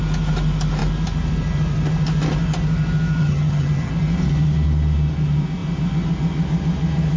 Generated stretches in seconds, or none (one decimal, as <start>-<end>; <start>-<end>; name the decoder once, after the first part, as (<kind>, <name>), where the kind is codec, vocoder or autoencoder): 3.2-3.9 (vocoder, HiFi-GAN)